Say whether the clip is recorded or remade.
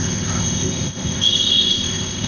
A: remade